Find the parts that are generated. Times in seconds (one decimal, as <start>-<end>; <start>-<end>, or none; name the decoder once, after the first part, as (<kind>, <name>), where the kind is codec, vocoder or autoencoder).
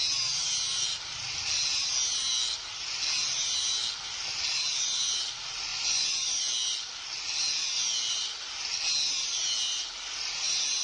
5.7-6.4 (vocoder, Vocos)